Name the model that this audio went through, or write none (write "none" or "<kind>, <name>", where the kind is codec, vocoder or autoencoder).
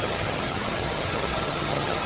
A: vocoder, HiFi-GAN